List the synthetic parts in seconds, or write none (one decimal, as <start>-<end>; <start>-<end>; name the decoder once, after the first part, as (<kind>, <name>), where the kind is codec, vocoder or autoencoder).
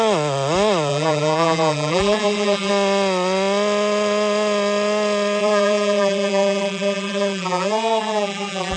0.9-2.7 (vocoder, BigVGAN v2); 5.4-8.8